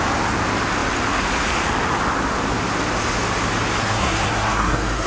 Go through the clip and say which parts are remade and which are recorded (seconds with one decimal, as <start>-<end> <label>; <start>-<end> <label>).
0.0-3.8 recorded; 3.8-5.1 remade